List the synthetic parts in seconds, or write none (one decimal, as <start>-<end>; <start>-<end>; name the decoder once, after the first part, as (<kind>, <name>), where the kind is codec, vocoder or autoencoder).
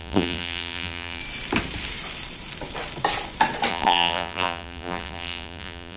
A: 0.0-1.2 (vocoder, BigVGAN v2); 3.7-6.0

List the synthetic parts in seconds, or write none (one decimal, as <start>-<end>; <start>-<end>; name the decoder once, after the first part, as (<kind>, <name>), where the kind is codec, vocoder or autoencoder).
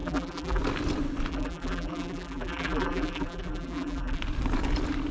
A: 0.0-0.6 (vocoder, BigVGAN v2); 1.3-4.2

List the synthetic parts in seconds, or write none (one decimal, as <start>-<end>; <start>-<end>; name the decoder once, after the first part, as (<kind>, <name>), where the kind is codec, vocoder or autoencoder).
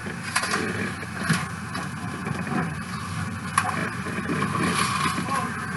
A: 0.0-0.5 (vocoder, BigVGAN v2); 2.2-3.0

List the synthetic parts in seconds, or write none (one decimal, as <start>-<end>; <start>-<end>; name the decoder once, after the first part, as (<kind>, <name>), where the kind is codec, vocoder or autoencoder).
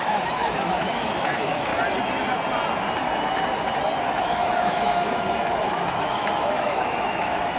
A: 0.0-1.7 (autoencoder, DAC-VAE); 4.2-7.6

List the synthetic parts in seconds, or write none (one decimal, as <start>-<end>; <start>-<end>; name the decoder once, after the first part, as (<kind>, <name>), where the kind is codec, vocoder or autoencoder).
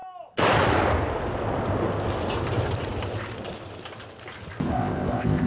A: 4.7-5.5 (codec, ZipCodec)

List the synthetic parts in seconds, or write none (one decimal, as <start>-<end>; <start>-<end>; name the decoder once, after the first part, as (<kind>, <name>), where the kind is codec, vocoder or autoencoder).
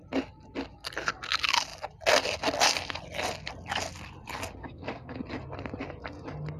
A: 4.6-5.2 (codec, SNAC)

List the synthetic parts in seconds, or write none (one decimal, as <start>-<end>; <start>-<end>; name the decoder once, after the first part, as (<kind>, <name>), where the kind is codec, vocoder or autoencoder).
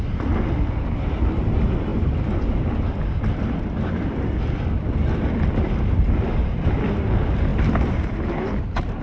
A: none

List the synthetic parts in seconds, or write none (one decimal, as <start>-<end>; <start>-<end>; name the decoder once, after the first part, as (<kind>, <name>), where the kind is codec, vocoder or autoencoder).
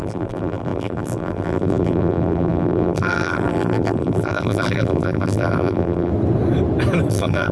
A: 0.0-6.1 (vocoder, BigVGAN v2); 7.1-7.5